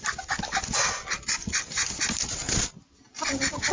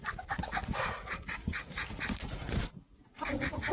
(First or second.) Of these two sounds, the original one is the first